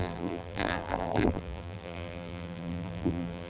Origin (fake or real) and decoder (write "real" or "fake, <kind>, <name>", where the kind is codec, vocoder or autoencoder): fake, vocoder, BigVGAN v2